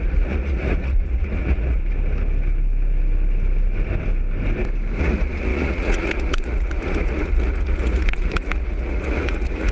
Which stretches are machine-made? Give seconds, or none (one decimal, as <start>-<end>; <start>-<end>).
0.0-1.8; 5.0-9.7

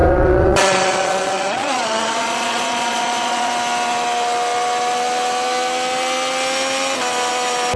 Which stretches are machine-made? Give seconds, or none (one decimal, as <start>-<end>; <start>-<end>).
0.0-3.5

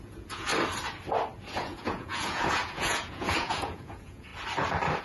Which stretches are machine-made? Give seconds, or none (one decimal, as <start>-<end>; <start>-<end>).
0.0-0.5; 1.5-4.3

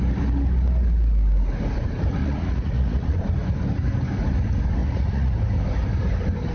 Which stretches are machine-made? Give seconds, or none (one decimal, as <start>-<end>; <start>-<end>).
2.2-3.2; 4.8-5.3

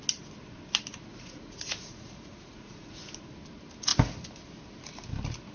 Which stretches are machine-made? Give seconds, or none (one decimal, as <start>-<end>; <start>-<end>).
1.1-3.0